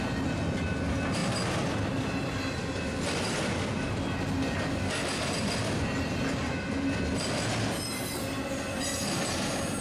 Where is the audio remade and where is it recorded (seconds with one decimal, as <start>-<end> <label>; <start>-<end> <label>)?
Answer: 0.0-9.8 recorded